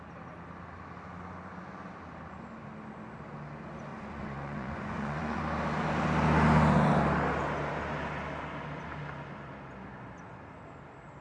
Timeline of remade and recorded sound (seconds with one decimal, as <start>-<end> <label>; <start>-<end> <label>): 0.0-3.9 recorded; 3.9-5.4 remade; 5.4-11.2 recorded